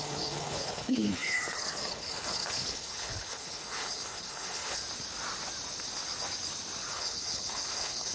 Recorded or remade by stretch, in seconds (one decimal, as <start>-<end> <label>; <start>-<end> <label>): 0.0-4.8 remade; 4.8-6.9 recorded; 6.9-8.1 remade